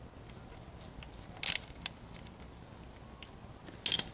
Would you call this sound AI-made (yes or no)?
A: no